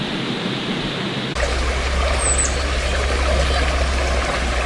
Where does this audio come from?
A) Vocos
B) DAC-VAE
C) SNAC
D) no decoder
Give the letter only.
D